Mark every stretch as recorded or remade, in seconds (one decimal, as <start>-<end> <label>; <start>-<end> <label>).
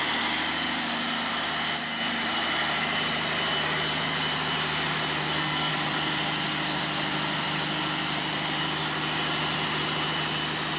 0.0-5.2 recorded; 5.2-5.7 remade; 5.7-10.8 recorded